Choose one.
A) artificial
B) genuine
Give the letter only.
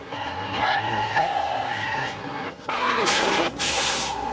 A